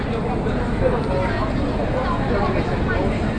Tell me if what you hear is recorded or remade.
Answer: recorded